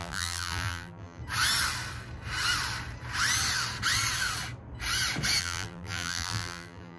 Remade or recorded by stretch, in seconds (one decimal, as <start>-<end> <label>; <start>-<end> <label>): 0.0-1.2 remade; 1.2-5.4 recorded; 5.4-7.0 remade